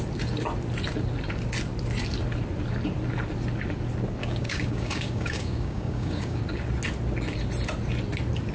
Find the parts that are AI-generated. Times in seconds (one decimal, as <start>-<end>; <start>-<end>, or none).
4.2-6.4